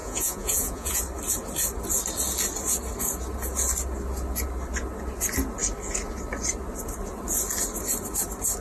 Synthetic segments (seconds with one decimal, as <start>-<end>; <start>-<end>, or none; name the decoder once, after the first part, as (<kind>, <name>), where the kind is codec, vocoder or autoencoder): 0.0-1.0 (vocoder, Vocos)